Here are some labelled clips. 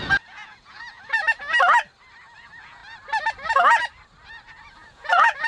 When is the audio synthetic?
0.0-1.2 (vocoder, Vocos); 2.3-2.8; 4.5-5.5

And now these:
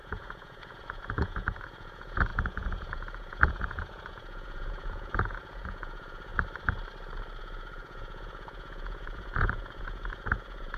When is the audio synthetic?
0.0-6.3 (vocoder, Vocos); 7.4-10.8

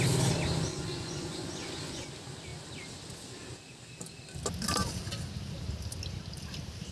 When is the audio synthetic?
0.7-2.1 (vocoder, Vocos)

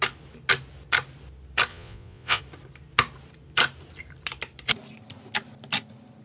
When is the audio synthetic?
1.7-2.4 (vocoder, Vocos)

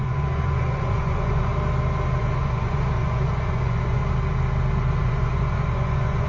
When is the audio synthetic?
0.0-1.5 (vocoder, Vocos); 2.2-4.0; 5.0-6.3

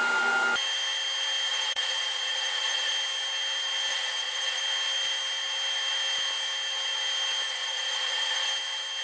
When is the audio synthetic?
1.5-2.9 (vocoder, Vocos); 3.9-4.6; 7.5-8.5